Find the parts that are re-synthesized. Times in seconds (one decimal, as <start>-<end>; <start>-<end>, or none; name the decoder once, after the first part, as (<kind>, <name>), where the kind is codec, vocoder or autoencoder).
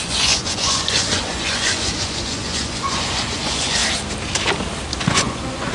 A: 0.0-3.8 (vocoder, Vocos); 5.1-5.7